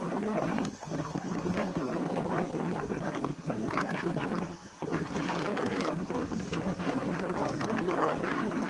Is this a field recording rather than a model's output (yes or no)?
no